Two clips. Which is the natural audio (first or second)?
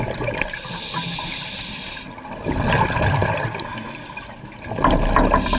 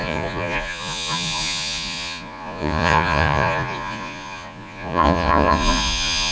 first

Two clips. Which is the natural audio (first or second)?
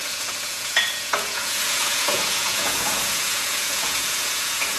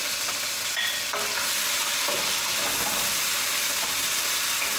second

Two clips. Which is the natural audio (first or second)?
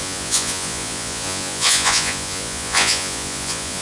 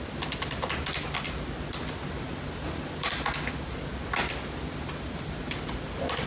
second